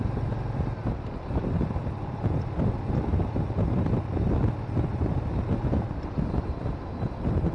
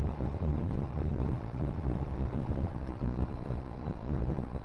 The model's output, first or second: second